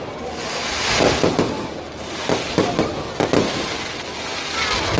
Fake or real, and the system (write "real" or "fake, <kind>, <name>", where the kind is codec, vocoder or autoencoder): real